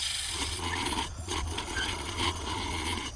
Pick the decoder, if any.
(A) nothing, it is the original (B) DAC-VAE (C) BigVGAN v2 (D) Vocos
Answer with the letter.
D